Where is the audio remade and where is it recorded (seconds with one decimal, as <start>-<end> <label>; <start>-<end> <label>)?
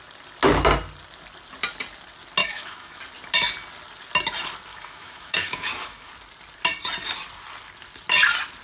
0.0-2.4 recorded; 2.4-3.0 remade; 3.0-4.7 recorded; 4.7-6.1 remade; 6.1-8.6 recorded